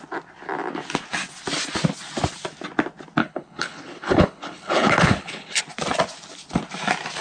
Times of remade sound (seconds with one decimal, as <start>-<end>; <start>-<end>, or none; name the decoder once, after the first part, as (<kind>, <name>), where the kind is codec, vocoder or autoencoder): 3.2-5.6 (codec, HILCodec)